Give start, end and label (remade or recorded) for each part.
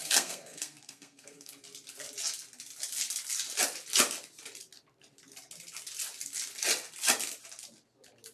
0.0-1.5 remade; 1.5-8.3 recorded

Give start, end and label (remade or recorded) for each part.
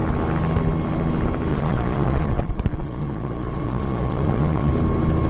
0.0-1.5 recorded; 1.5-4.7 remade; 4.7-5.3 recorded